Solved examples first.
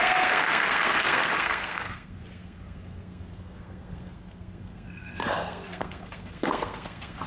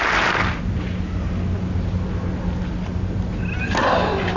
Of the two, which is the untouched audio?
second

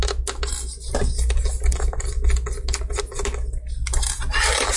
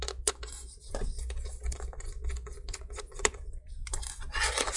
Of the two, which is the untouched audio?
first